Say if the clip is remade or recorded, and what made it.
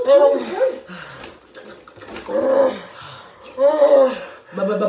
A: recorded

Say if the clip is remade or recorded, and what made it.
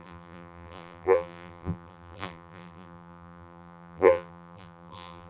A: remade, vocoder, BigVGAN v2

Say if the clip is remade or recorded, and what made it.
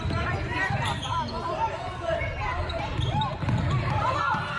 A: remade, vocoder, BigVGAN v2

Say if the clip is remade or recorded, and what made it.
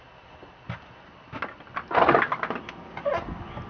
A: recorded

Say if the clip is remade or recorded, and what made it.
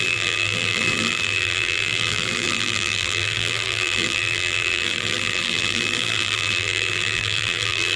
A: remade, vocoder, BigVGAN v2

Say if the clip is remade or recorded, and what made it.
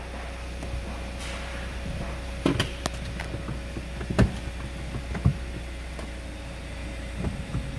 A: recorded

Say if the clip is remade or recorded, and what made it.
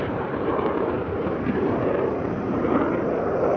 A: remade, vocoder, BigVGAN v2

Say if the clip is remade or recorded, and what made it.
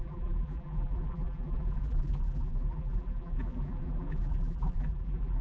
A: remade, vocoder, BigVGAN v2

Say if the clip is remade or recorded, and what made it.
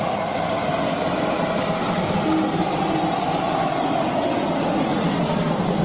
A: recorded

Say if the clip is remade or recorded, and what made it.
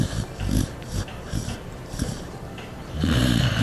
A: remade, vocoder, BigVGAN v2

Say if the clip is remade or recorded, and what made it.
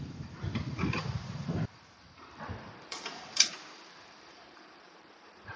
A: remade, vocoder, BigVGAN v2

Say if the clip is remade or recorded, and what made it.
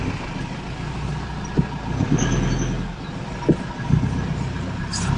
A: recorded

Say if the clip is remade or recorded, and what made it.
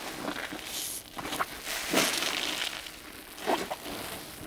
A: recorded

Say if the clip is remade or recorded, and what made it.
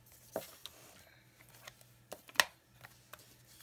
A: recorded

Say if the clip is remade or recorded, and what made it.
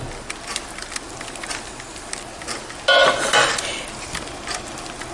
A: recorded